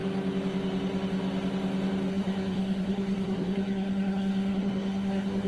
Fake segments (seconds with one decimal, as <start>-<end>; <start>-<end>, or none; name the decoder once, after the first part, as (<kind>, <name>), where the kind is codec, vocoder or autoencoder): 2.1-5.5 (codec, SNAC)